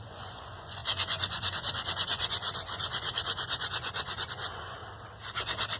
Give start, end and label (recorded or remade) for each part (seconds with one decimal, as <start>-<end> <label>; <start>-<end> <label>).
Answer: 0.0-4.8 remade; 4.8-5.8 recorded